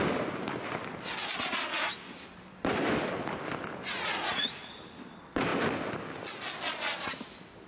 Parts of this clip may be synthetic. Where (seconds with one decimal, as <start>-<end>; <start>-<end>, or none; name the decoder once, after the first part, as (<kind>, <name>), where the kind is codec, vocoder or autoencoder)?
3.8-4.6 (vocoder, Vocos)